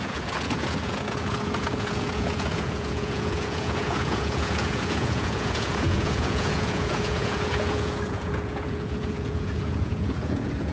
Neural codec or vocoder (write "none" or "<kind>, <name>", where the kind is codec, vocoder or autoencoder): vocoder, Vocos